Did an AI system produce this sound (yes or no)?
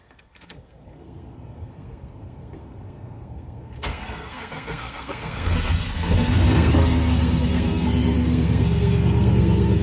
yes